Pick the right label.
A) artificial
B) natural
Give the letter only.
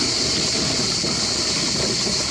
B